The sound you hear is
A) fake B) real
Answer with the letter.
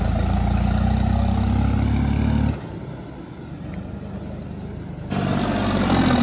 B